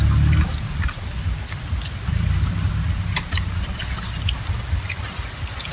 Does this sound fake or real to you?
real